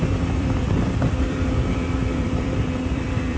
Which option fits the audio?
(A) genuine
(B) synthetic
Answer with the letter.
B